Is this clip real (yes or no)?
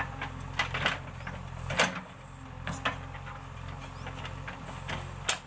yes